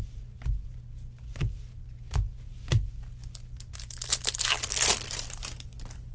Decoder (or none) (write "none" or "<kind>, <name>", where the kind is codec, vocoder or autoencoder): none